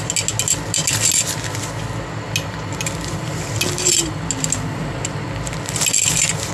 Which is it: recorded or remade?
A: recorded